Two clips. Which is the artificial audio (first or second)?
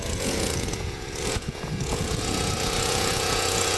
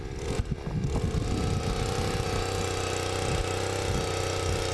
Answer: first